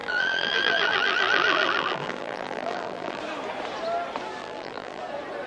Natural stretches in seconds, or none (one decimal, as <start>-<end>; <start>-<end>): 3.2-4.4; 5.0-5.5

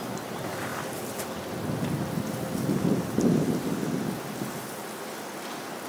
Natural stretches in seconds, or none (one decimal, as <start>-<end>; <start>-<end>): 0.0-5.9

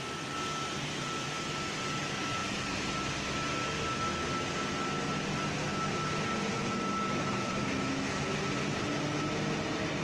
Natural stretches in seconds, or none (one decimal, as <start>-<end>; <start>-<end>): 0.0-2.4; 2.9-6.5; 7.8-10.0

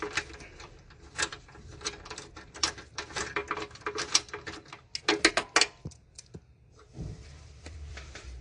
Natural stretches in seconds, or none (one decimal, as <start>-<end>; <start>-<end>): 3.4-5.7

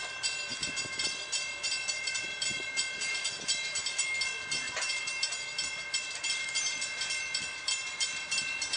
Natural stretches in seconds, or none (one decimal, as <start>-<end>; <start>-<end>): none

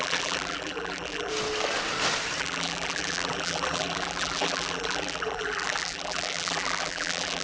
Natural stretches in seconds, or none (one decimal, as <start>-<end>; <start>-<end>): 1.3-2.4

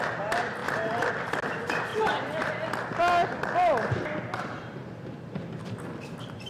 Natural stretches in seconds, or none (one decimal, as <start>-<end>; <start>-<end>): 0.0-0.6; 1.1-1.9; 2.5-6.5

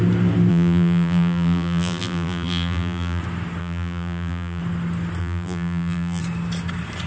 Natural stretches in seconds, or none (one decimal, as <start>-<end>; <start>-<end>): 0.0-0.5; 3.2-3.6; 4.6-5.2; 6.2-7.1